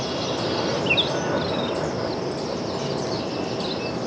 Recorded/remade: recorded